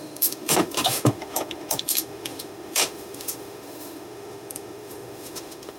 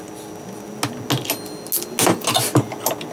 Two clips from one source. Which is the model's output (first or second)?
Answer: first